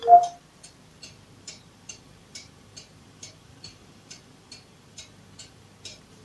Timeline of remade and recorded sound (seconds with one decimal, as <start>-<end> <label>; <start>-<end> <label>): 0.0-1.3 recorded; 1.3-6.2 remade